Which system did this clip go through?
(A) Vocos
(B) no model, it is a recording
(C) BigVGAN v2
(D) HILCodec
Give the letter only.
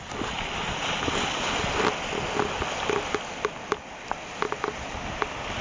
B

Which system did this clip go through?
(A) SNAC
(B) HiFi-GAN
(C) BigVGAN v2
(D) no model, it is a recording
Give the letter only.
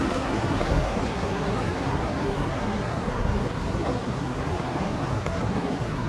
A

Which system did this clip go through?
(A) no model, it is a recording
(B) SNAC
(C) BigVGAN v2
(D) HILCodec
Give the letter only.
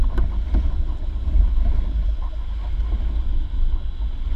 A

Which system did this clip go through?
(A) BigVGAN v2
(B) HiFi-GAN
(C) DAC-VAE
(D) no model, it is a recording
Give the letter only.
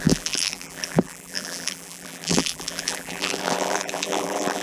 A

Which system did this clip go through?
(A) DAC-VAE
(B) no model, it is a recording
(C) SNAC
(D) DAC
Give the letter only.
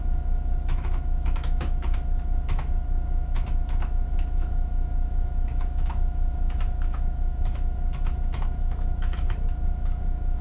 A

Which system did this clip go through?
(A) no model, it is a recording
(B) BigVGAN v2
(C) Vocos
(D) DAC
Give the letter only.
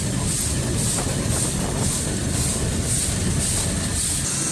A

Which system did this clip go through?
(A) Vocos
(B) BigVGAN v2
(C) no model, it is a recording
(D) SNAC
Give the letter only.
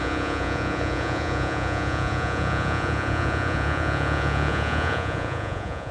A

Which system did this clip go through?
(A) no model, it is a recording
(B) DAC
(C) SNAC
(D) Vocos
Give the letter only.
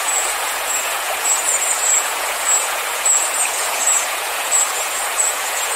D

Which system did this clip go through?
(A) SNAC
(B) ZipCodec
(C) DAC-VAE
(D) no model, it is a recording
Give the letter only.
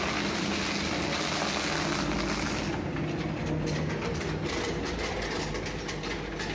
D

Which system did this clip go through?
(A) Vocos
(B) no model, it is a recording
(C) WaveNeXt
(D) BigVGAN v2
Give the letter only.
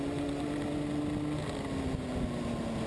B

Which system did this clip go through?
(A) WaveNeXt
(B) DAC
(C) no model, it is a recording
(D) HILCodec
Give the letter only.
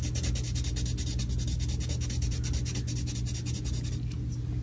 C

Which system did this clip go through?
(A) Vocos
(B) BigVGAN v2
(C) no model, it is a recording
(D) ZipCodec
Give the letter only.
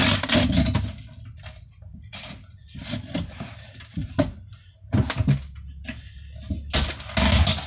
C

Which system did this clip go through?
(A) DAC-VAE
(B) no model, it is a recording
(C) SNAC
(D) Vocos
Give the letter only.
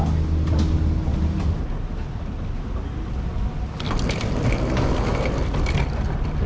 B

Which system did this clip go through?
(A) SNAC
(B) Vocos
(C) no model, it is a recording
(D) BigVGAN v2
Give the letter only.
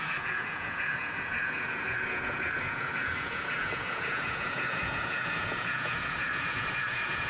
B